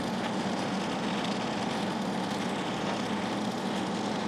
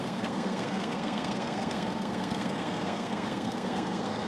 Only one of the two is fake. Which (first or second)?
second